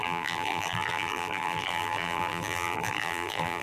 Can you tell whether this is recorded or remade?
remade